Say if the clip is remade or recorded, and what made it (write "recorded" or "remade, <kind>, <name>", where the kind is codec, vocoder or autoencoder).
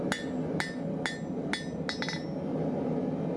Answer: recorded